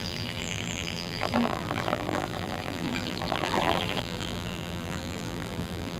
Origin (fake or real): fake